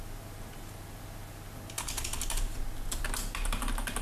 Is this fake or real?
real